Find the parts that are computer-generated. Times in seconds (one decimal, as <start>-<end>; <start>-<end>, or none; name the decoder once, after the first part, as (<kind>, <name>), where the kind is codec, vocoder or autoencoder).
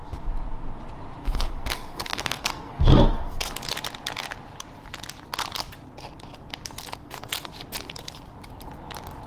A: 1.2-3.5 (codec, SNAC); 6.9-7.5